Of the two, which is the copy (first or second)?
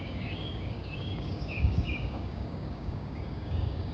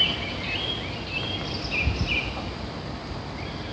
first